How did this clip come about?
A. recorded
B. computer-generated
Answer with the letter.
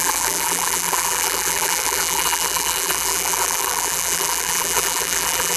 B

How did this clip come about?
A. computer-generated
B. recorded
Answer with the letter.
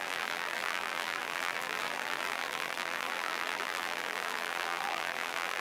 A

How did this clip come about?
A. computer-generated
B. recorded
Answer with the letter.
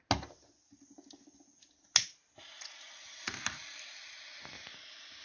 B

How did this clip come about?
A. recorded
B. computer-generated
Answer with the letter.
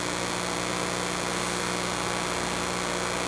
A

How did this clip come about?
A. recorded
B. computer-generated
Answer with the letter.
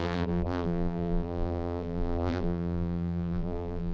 B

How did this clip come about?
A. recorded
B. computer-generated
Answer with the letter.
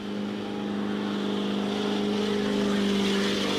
A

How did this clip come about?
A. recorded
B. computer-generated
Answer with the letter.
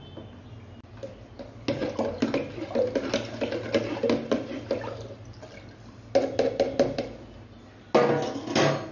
A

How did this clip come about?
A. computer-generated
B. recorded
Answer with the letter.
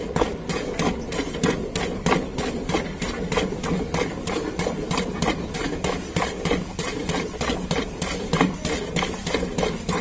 B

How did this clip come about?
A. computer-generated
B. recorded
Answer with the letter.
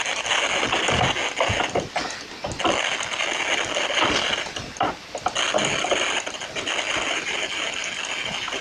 B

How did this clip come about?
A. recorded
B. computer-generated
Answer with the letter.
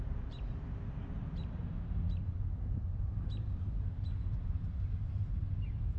B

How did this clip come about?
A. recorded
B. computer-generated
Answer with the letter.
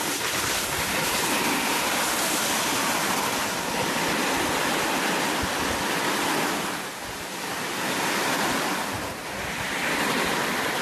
A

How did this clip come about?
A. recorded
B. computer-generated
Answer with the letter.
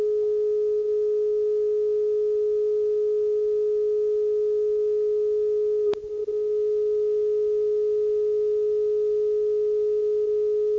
A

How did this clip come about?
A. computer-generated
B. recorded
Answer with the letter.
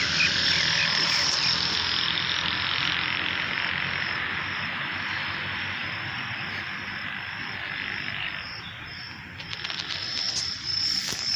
B